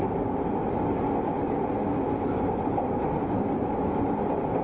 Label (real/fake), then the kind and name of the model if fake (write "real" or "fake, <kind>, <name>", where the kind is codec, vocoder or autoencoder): real